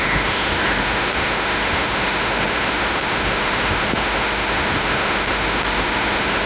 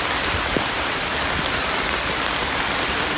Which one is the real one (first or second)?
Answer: second